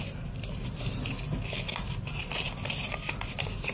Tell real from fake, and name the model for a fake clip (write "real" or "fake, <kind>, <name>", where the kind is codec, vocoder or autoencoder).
real